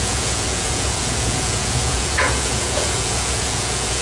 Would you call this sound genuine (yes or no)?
no